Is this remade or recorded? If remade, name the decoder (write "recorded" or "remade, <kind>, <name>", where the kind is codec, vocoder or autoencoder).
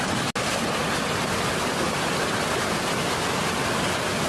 recorded